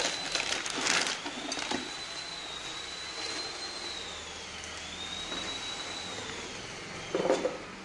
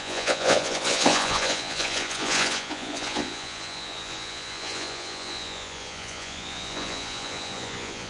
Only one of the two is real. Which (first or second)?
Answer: first